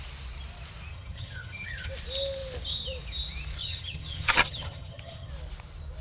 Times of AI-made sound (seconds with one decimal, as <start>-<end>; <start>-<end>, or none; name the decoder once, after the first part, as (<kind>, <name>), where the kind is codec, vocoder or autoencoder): 0.9-1.9 (vocoder, HiFi-GAN); 3.6-5.3